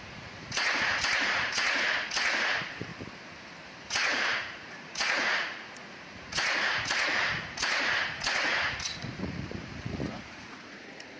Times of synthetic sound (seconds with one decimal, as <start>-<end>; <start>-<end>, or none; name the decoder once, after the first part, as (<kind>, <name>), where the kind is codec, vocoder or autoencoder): 0.0-2.9 (vocoder, Vocos); 3.8-11.2